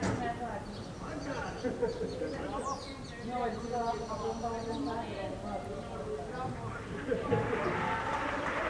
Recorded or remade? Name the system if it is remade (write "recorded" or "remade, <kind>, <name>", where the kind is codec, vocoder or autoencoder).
recorded